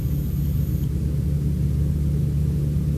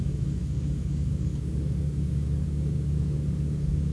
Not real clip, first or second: second